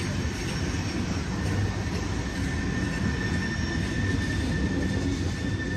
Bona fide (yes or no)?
yes